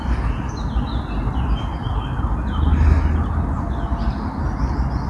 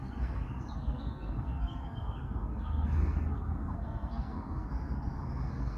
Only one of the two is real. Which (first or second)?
first